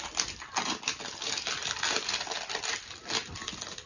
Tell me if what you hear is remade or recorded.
recorded